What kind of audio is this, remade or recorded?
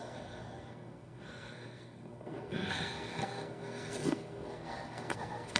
remade